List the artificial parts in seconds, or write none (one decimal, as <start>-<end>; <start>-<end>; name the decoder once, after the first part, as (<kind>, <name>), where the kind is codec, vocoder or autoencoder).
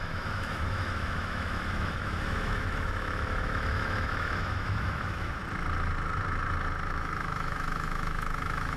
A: 0.0-5.4 (autoencoder, DAC-VAE); 6.9-8.8